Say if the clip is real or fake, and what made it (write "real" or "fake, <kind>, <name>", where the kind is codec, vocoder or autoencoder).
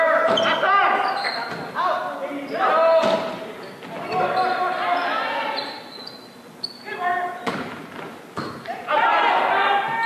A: real